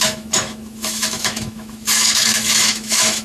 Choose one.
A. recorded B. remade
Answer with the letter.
B